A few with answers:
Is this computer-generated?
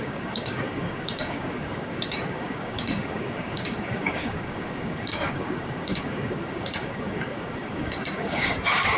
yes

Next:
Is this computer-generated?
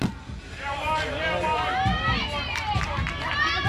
no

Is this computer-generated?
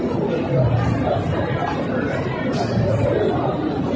no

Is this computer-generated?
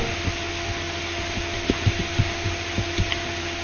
no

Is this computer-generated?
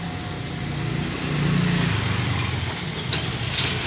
no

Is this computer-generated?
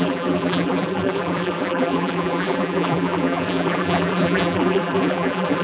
yes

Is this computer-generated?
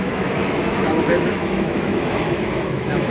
yes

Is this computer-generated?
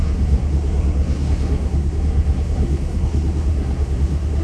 yes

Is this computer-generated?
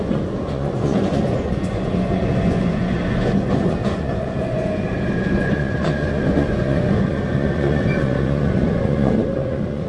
yes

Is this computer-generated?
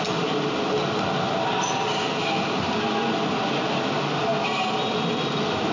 no